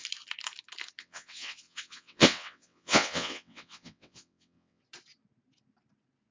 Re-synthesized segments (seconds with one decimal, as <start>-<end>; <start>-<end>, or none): 1.0-4.8